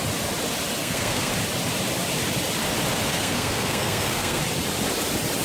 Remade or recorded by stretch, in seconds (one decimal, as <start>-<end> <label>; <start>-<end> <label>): 0.0-0.8 recorded; 0.8-1.3 remade; 1.3-3.1 recorded; 3.1-4.4 remade; 4.4-5.4 recorded